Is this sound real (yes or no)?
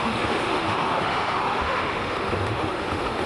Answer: no